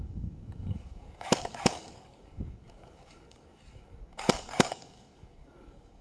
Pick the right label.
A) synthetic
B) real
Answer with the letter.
A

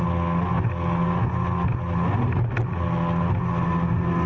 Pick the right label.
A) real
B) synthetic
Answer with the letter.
A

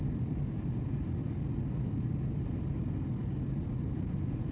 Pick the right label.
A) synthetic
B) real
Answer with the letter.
B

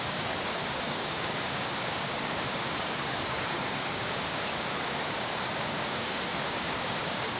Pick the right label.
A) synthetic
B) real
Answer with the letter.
A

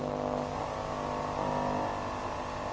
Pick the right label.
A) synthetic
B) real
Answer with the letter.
B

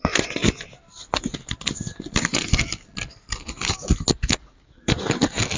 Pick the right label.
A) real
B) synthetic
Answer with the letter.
A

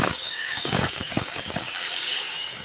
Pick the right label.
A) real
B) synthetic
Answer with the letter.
B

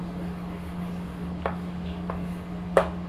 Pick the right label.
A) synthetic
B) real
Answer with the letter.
A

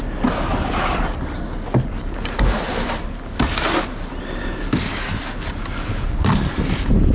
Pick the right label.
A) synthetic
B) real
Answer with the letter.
B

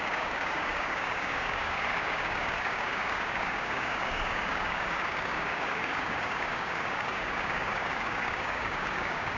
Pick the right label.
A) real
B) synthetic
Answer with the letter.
B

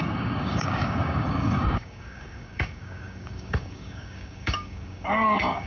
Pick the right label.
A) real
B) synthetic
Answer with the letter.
B